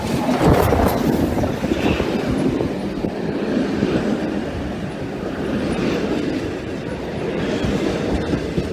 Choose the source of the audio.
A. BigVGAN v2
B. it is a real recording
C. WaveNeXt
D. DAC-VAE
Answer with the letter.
A